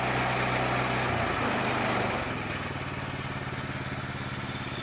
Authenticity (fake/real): real